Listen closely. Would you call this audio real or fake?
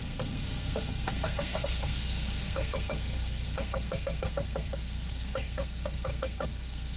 fake